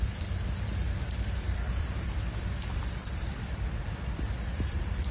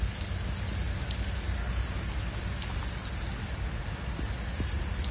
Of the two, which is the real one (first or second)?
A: second